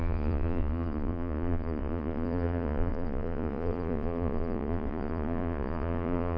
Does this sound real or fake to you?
fake